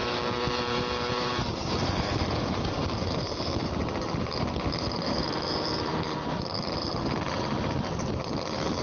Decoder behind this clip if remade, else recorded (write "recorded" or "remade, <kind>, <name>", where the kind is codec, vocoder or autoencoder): remade, vocoder, BigVGAN v2